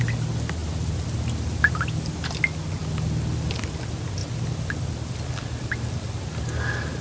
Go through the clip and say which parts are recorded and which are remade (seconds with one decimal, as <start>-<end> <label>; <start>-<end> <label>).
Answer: 0.0-7.0 recorded